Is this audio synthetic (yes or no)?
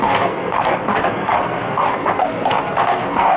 yes